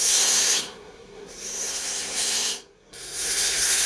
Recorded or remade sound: remade